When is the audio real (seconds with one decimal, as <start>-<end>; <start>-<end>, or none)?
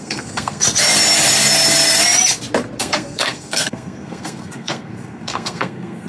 0.6-2.8